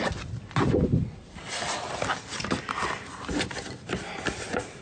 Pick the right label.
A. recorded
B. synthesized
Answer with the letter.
A